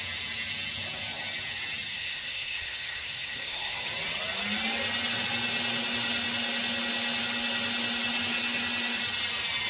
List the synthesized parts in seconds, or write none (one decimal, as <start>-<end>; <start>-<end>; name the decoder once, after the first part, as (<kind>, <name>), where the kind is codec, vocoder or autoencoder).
1.9-3.8 (codec, SNAC)